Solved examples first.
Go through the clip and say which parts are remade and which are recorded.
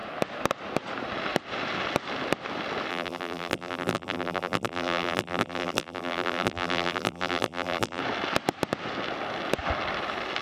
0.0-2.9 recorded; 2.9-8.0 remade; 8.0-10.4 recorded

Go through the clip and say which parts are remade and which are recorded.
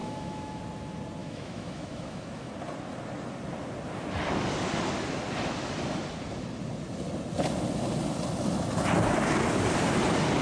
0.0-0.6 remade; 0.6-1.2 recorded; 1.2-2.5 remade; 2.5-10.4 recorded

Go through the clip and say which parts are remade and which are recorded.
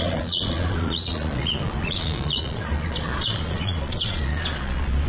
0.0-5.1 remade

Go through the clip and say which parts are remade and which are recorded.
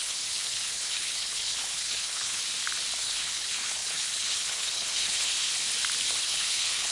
0.0-2.4 remade; 2.4-3.0 recorded; 3.0-5.5 remade; 5.5-6.2 recorded; 6.2-6.9 remade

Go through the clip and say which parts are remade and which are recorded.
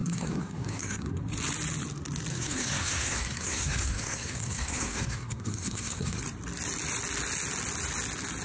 0.0-1.2 remade; 1.2-2.3 recorded; 2.3-6.2 remade; 6.2-8.4 recorded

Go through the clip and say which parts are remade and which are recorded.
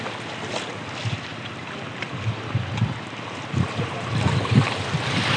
0.0-1.3 recorded; 1.3-4.5 remade; 4.5-5.4 recorded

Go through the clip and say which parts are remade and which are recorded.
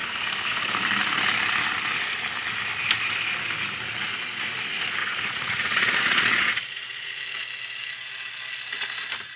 0.0-5.0 recorded; 5.0-7.2 remade; 7.2-9.4 recorded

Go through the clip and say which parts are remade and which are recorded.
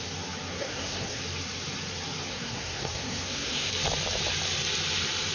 0.0-0.5 recorded; 0.5-1.2 remade; 1.2-2.3 recorded; 2.3-3.7 remade; 3.7-5.3 recorded